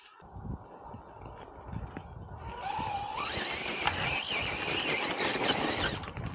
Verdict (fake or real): real